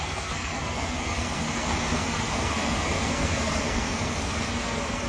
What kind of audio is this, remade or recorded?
remade